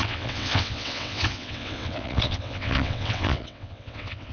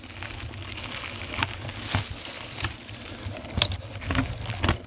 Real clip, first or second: second